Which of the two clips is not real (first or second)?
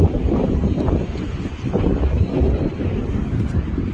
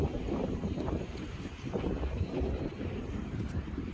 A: second